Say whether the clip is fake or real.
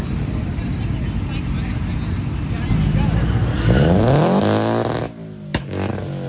real